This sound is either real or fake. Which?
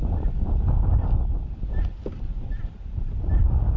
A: real